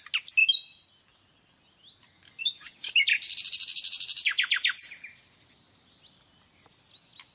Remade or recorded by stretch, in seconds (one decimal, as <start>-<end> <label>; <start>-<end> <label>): 0.0-2.4 recorded; 2.4-3.0 remade; 3.0-7.3 recorded